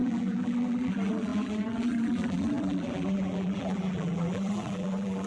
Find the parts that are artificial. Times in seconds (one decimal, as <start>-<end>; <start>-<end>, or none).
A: 0.0-5.3